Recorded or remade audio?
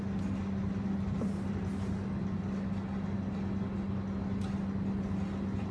recorded